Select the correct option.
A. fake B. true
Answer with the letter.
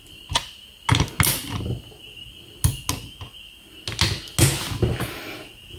B